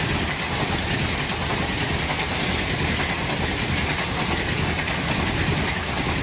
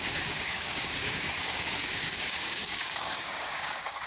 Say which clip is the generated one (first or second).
second